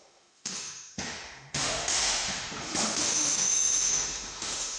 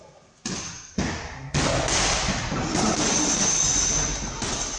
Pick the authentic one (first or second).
second